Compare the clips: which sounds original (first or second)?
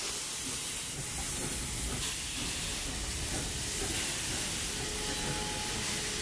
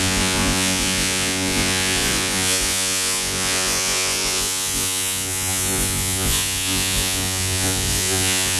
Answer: first